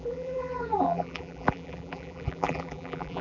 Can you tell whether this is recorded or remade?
remade